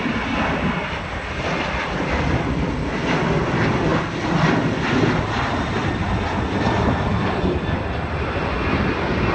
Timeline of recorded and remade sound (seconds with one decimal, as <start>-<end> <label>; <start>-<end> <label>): 0.0-9.3 recorded